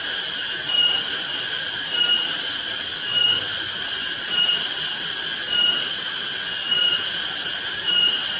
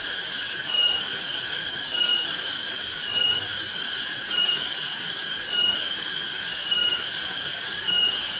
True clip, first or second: first